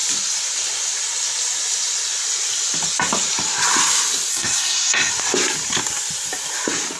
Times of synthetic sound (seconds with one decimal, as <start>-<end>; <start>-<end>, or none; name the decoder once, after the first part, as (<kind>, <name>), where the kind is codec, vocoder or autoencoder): 4.3-5.1 (codec, SNAC)